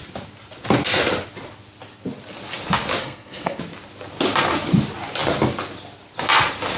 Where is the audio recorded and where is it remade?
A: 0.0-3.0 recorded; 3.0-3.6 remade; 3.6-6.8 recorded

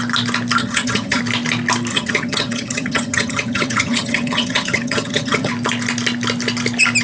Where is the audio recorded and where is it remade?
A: 0.0-0.6 recorded; 0.6-1.2 remade; 1.2-1.9 recorded; 1.9-5.5 remade; 5.5-7.0 recorded

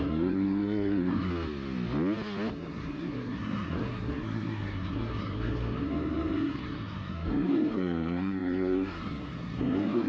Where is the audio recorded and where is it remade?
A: 0.0-1.3 remade; 1.3-2.5 recorded; 2.5-10.1 remade